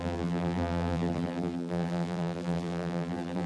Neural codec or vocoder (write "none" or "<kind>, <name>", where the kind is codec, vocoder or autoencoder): vocoder, BigVGAN v2